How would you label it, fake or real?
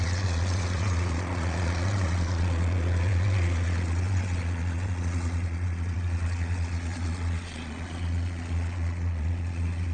fake